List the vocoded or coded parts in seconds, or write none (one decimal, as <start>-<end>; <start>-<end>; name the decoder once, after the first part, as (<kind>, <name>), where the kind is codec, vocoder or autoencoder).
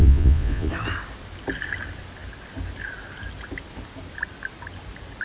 0.0-0.7 (vocoder, Vocos)